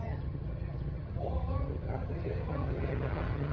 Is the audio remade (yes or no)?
yes